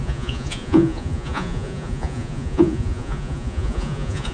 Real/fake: fake